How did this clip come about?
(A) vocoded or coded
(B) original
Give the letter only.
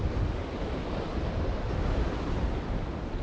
B